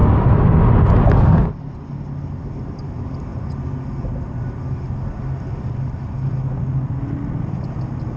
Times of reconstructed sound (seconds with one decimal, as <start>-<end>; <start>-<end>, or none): none